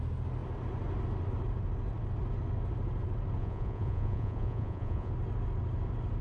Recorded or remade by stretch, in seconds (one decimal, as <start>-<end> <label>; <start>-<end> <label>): 0.0-3.4 recorded; 3.4-5.1 remade; 5.1-6.2 recorded